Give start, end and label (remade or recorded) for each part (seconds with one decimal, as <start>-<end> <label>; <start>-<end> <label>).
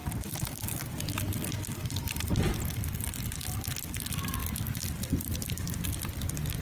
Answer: 0.0-6.6 recorded